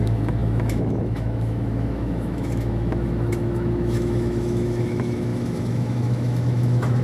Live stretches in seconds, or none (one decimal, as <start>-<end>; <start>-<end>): none